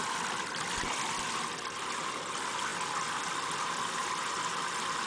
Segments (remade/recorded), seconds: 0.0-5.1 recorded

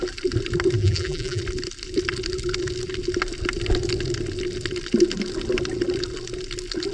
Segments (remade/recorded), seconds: 0.0-0.8 recorded; 0.8-1.4 remade; 1.4-6.9 recorded

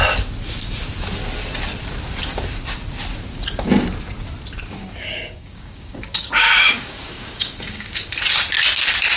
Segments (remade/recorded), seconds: 0.0-4.8 recorded; 4.8-8.1 remade; 8.1-9.2 recorded

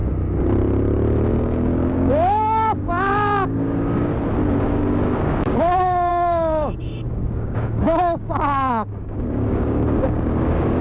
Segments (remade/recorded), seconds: 0.0-1.3 recorded; 1.3-4.1 remade; 4.1-4.6 recorded; 4.6-10.8 remade

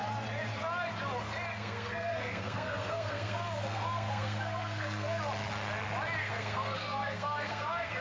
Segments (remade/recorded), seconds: 0.0-1.5 recorded; 1.5-5.2 remade; 5.2-6.2 recorded; 6.2-8.0 remade

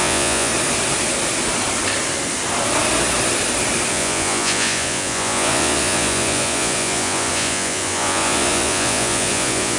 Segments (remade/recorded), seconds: 0.0-0.5 remade; 0.5-3.9 recorded; 3.9-9.8 remade